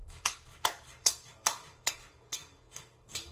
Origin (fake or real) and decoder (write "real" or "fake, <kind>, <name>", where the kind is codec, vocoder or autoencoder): fake, codec, DAC